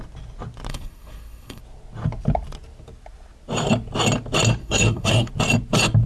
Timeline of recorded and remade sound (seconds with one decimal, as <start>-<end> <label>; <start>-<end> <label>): 0.0-0.7 recorded; 0.7-1.6 remade; 1.6-4.6 recorded; 4.6-5.3 remade; 5.3-6.1 recorded